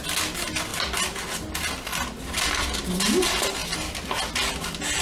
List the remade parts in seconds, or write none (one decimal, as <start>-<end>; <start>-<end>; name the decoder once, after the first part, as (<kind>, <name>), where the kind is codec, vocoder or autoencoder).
none